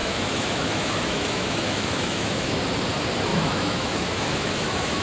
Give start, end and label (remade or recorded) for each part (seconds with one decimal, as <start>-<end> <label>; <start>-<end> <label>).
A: 0.0-2.6 remade; 2.6-3.3 recorded; 3.3-5.0 remade